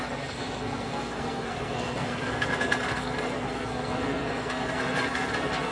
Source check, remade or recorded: remade